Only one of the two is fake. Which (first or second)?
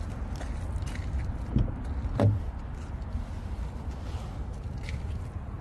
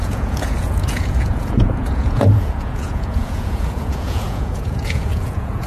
second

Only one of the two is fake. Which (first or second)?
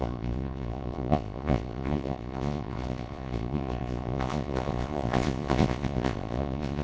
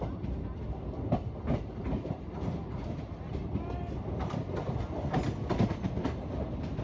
first